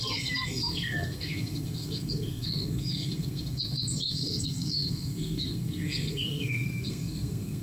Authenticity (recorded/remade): remade